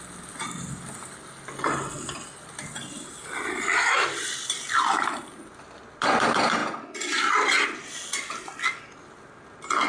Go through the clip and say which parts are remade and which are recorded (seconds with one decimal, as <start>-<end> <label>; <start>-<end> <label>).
0.0-9.9 recorded